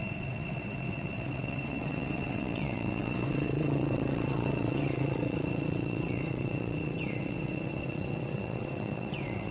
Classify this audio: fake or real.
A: fake